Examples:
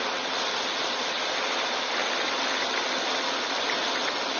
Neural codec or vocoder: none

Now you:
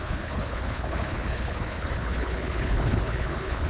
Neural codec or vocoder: codec, HILCodec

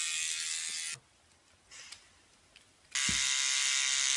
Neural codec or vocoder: none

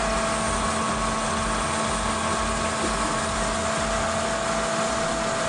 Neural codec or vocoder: none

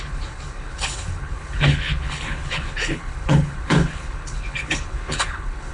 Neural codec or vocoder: codec, HILCodec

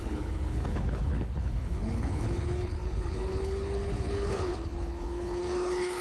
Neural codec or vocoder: codec, HILCodec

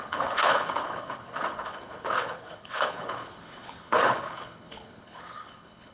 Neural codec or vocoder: codec, HILCodec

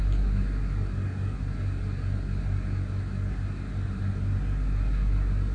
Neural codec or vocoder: none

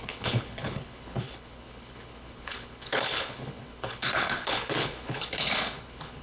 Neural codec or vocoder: codec, HILCodec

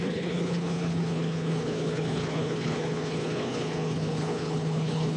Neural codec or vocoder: codec, HILCodec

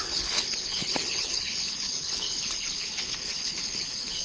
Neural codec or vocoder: codec, HILCodec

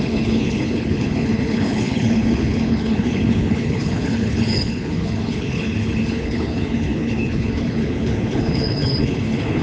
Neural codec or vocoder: codec, HILCodec